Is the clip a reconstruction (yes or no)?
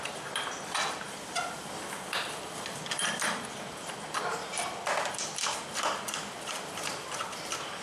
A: yes